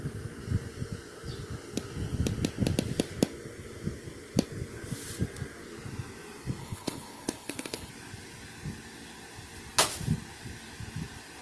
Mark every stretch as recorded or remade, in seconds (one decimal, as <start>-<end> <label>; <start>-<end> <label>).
0.0-6.6 recorded; 6.6-7.9 remade; 7.9-11.4 recorded

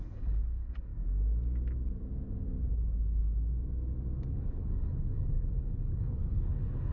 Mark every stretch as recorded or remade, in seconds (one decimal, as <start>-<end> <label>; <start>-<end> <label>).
0.0-0.9 remade; 0.9-2.7 recorded; 2.7-3.2 remade; 3.2-4.3 recorded; 4.3-6.9 remade

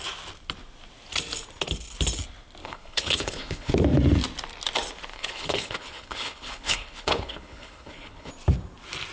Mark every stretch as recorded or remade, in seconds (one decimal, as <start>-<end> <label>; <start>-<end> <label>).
0.0-2.6 recorded; 2.6-3.7 remade; 3.7-5.1 recorded; 5.1-8.3 remade; 8.3-9.1 recorded

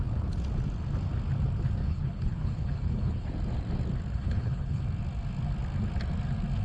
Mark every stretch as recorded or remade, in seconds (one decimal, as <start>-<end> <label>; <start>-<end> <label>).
0.0-1.8 recorded; 1.8-3.3 remade; 3.3-4.1 recorded; 4.1-4.8 remade; 4.8-6.6 recorded

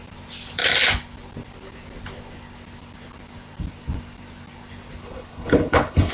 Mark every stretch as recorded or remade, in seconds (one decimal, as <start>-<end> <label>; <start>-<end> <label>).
0.0-5.0 recorded; 5.0-6.1 remade